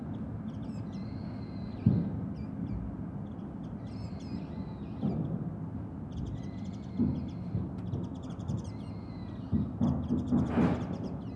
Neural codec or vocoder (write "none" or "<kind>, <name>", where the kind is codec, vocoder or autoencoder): none